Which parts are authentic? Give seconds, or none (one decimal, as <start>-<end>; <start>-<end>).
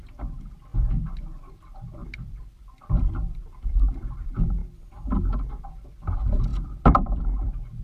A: 0.0-2.0; 4.1-6.5; 7.2-7.8